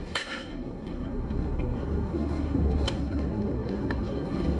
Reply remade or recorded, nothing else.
remade